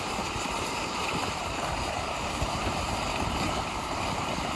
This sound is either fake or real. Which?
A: fake